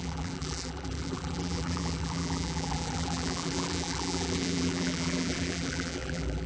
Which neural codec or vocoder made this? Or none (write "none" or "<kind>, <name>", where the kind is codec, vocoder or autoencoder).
vocoder, BigVGAN v2